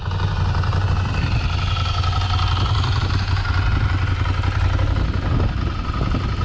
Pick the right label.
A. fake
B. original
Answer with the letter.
B